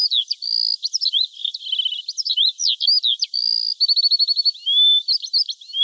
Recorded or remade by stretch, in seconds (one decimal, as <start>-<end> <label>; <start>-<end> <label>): 0.0-5.8 recorded